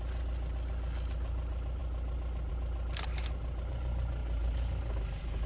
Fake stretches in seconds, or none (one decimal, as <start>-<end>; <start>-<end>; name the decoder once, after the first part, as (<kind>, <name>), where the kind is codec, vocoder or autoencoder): none